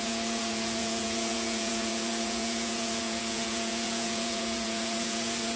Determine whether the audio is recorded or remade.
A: remade